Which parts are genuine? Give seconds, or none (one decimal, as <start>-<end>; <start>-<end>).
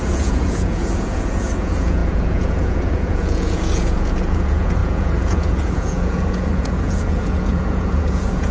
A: none